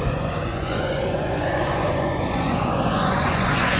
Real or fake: fake